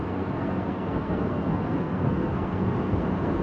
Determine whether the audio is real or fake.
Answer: fake